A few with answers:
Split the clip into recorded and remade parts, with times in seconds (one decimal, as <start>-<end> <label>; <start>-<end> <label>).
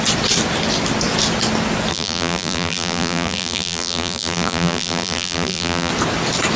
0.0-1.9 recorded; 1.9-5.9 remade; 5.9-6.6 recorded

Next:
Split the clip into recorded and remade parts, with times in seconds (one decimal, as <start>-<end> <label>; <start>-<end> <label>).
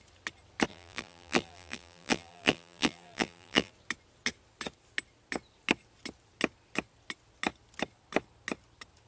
0.0-0.7 recorded; 0.7-3.7 remade; 3.7-9.1 recorded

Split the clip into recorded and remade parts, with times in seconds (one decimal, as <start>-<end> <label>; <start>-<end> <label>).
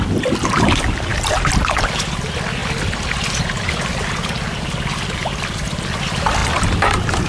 0.0-1.1 recorded; 1.1-2.2 remade; 2.2-7.3 recorded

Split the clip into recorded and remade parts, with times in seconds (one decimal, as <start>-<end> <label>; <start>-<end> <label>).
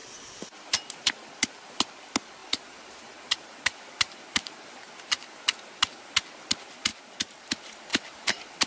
0.0-2.4 recorded; 2.4-4.9 remade; 4.9-6.9 recorded; 6.9-7.5 remade; 7.5-7.9 recorded; 7.9-8.7 remade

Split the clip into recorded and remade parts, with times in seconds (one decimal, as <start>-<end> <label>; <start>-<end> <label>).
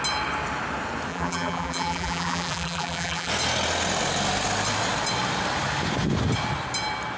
0.0-1.1 recorded; 1.1-3.3 remade; 3.3-7.2 recorded